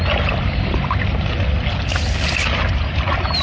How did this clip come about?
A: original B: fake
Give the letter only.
A